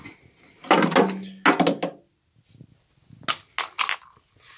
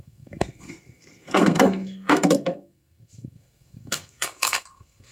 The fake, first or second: second